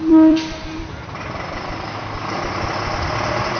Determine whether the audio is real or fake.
fake